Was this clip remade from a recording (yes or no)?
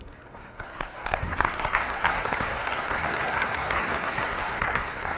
yes